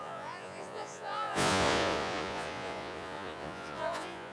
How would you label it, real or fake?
fake